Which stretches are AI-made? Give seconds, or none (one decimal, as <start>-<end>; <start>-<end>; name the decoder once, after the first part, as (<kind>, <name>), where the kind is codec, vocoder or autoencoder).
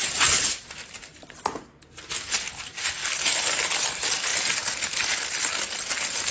none